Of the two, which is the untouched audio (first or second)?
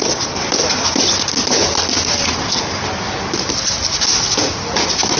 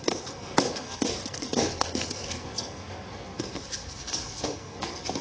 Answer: first